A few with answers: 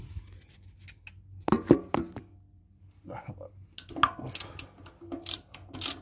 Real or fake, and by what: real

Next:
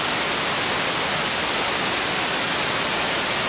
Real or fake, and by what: real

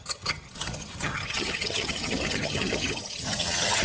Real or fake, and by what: fake, vocoder, HiFi-GAN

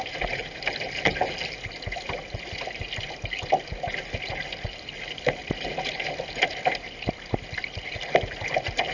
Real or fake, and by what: real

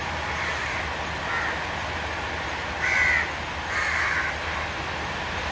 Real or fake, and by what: real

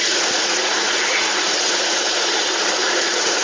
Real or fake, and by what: fake, vocoder, Vocos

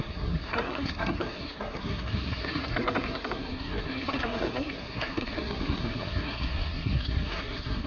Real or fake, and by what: fake, codec, SNAC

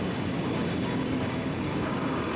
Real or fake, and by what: fake, codec, DAC